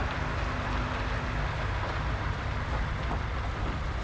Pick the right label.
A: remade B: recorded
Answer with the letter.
B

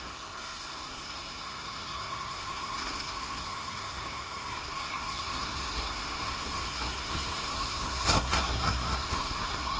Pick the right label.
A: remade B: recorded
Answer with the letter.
A